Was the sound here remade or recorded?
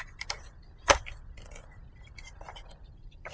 remade